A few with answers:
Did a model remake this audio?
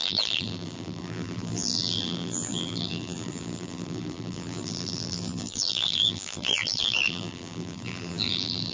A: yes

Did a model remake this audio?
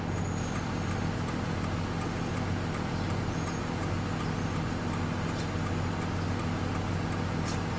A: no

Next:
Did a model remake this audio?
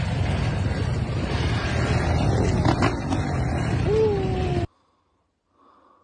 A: no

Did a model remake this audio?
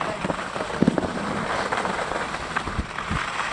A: no